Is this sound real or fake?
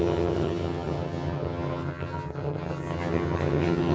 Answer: fake